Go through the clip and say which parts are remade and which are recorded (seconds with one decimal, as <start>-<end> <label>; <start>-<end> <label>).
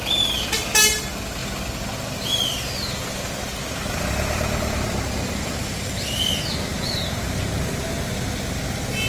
0.0-9.1 recorded